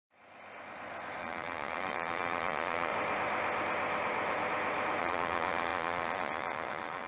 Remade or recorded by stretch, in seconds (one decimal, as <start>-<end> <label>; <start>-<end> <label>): 0.0-1.2 recorded; 1.2-2.9 remade; 2.9-5.0 recorded; 5.0-7.1 remade